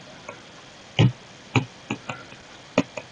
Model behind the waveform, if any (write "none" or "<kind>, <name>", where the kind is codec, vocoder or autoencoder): none